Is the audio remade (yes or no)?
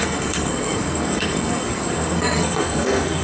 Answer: yes